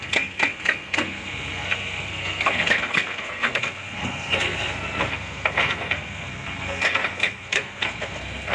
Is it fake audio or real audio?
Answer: fake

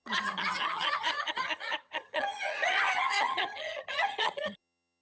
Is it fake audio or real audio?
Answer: fake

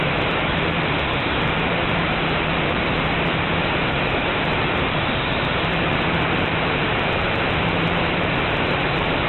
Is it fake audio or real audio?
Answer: fake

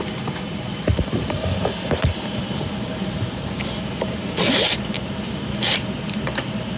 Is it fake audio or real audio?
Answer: fake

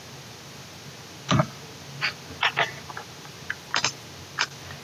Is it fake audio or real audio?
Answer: real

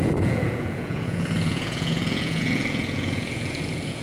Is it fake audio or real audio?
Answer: fake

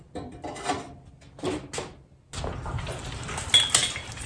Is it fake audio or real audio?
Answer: real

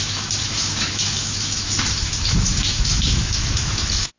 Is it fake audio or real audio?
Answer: fake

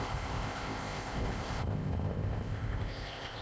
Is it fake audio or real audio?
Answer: fake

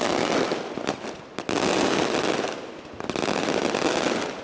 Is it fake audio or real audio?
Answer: real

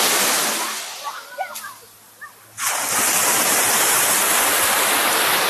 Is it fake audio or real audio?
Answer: real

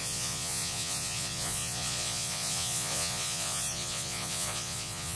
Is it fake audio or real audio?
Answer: fake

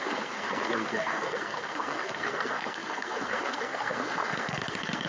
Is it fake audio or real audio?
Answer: fake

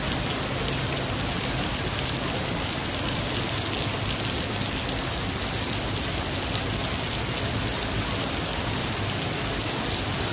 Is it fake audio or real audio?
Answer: real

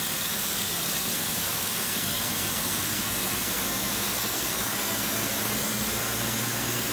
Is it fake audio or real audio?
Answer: fake